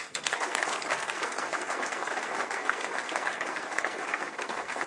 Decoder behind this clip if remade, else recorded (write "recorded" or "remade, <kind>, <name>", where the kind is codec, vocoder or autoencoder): remade, codec, SNAC